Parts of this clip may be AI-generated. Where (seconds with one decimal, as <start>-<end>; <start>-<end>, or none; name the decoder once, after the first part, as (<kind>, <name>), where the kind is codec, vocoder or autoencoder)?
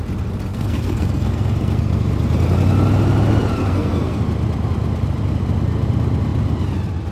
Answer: 0.5-2.1 (codec, SNAC); 3.6-4.2